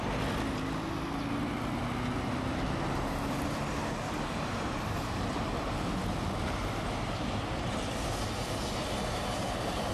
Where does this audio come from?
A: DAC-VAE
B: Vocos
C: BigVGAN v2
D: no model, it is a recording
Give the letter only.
D